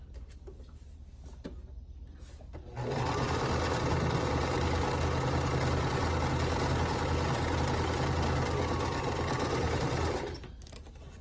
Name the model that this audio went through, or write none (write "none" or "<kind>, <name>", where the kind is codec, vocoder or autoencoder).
none